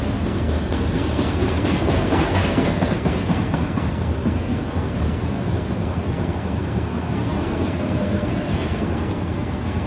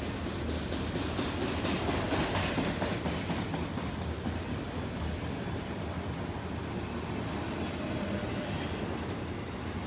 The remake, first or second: first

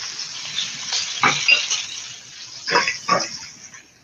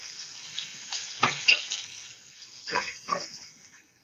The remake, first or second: second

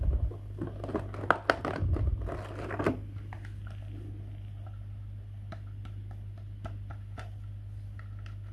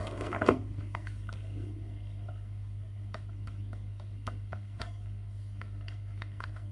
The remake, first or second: second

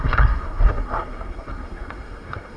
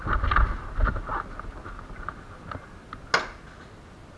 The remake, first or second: first